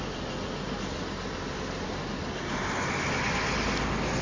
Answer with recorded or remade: recorded